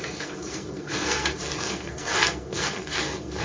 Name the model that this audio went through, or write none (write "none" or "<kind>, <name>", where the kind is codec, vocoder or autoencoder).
codec, SNAC